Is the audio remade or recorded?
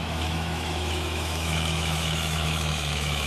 remade